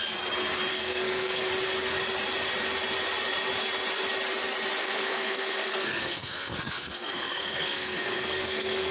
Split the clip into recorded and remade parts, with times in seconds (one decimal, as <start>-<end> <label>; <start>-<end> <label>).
0.0-0.7 recorded; 0.7-1.5 remade; 1.5-4.8 recorded; 4.8-8.9 remade